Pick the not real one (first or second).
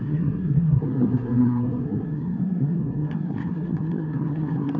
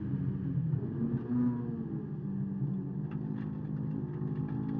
first